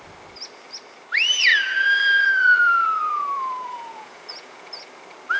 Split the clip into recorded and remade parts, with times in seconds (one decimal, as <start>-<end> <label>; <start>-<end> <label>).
0.0-1.5 recorded; 1.5-4.7 remade; 4.7-5.4 recorded